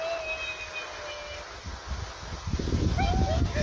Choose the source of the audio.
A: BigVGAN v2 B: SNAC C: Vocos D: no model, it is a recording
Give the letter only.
D